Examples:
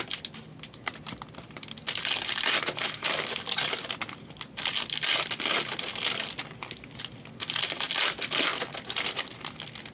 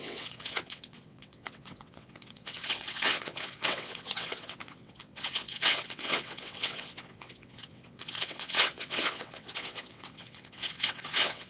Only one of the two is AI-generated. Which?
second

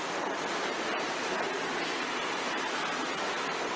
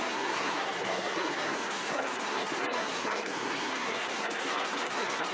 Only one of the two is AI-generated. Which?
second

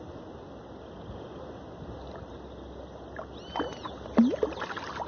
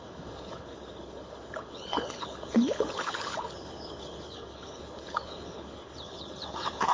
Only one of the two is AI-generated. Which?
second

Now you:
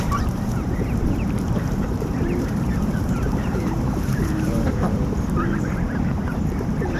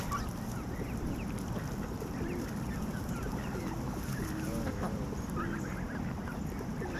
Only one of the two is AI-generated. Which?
first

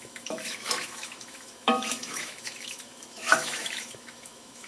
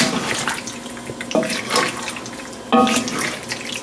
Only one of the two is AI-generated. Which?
first